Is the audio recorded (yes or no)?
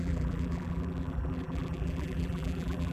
no